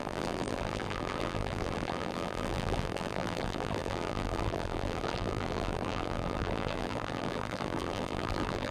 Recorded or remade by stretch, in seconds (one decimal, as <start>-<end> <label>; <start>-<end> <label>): 0.0-8.7 remade